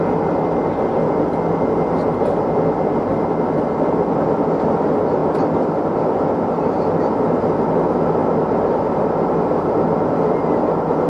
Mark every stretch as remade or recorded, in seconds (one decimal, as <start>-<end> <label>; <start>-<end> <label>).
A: 0.0-5.2 recorded; 5.2-5.8 remade; 5.8-8.2 recorded; 8.2-8.8 remade; 8.8-11.1 recorded

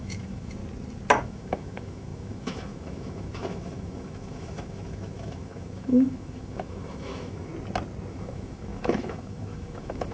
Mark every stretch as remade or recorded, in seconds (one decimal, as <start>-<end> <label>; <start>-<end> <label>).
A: 0.0-0.6 remade; 0.6-1.2 recorded; 1.2-7.5 remade; 7.5-8.1 recorded; 8.1-10.1 remade

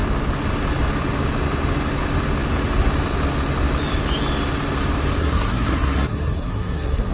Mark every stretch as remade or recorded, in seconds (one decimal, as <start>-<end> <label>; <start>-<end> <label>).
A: 0.0-5.2 recorded; 5.2-7.1 remade

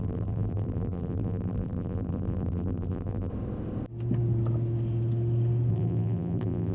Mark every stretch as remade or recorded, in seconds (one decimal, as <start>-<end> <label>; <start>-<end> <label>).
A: 0.0-3.3 remade; 3.3-5.7 recorded; 5.7-6.7 remade

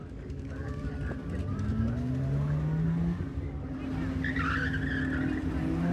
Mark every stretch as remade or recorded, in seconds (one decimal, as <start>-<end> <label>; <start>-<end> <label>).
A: 0.0-0.9 remade; 0.9-1.5 recorded; 1.5-2.1 remade; 2.1-5.9 recorded